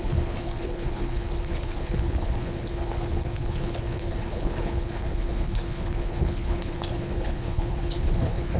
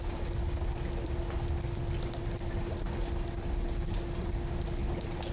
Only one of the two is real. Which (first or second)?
second